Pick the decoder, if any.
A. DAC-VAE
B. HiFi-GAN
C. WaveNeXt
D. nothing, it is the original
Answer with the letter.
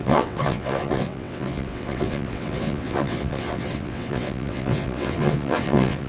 C